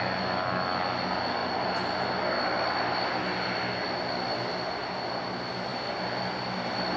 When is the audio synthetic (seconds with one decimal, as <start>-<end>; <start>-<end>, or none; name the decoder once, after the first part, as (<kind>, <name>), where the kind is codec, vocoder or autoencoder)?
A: none